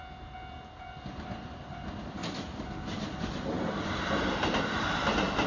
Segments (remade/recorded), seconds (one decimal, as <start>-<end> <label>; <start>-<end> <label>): 0.0-5.5 recorded